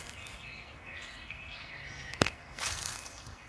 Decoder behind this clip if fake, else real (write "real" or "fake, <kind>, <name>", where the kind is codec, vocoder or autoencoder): fake, codec, SNAC